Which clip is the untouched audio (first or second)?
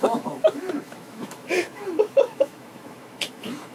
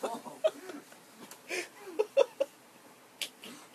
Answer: second